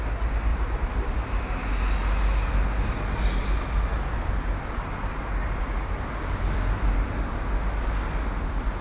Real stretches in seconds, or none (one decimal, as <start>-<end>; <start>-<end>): 0.0-0.5; 1.3-8.8

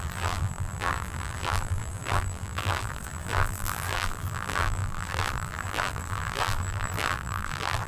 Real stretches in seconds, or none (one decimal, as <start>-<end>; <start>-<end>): none